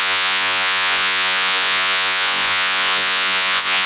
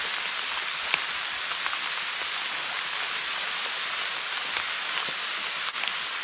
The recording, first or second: second